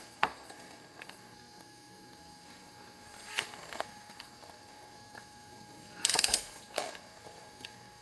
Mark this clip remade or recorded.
remade